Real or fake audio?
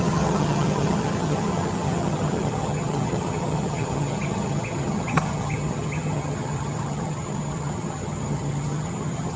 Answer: fake